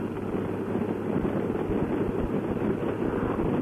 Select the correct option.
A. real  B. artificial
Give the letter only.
A